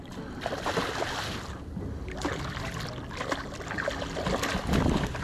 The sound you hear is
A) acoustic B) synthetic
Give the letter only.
A